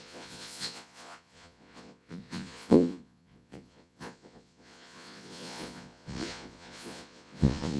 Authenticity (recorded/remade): remade